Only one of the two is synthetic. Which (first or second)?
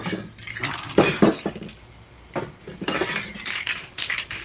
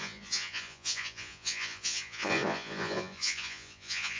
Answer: second